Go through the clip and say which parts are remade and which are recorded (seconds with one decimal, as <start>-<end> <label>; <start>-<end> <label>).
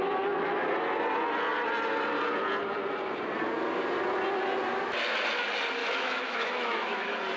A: 0.0-5.8 recorded; 5.8-7.0 remade; 7.0-7.4 recorded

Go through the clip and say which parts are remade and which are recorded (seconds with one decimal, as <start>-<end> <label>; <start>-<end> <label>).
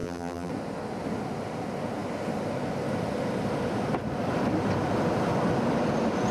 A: 0.0-0.5 remade; 0.5-6.3 recorded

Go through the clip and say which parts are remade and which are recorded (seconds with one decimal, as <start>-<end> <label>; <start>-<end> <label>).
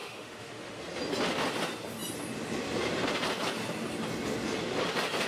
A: 0.0-0.8 remade; 0.8-5.3 recorded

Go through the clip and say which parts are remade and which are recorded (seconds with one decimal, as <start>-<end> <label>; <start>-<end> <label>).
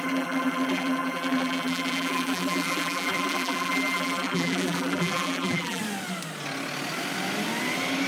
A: 0.0-5.8 remade; 5.8-8.1 recorded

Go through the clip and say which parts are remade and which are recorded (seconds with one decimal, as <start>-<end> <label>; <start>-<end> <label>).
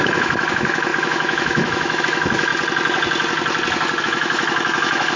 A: 0.0-2.5 remade; 2.5-4.0 recorded; 4.0-5.2 remade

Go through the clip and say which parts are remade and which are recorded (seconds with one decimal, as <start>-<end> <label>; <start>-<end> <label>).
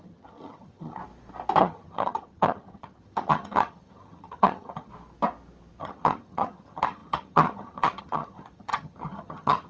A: 0.0-1.0 remade; 1.0-1.6 recorded; 1.6-4.9 remade; 4.9-5.8 recorded; 5.8-9.7 remade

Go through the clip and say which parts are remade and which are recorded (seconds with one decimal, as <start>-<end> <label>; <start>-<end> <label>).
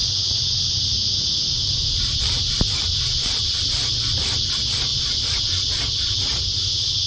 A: 0.0-1.1 remade; 1.1-1.8 recorded; 1.8-3.4 remade; 3.4-4.9 recorded; 4.9-5.4 remade; 5.4-7.1 recorded